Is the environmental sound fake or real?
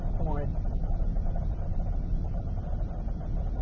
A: real